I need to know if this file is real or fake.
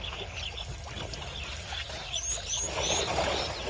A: real